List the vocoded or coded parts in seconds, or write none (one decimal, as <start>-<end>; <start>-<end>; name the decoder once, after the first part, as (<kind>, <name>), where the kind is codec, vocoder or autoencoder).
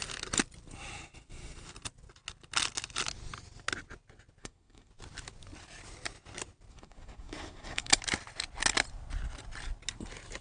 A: 4.4-4.9 (codec, SNAC); 6.7-7.9